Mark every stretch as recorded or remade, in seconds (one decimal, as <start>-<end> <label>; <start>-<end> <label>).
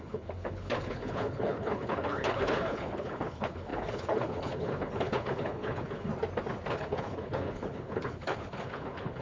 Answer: 0.0-6.1 remade; 6.1-6.7 recorded; 6.7-9.2 remade